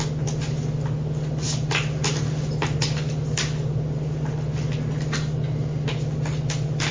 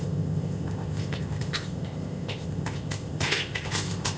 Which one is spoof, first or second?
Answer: second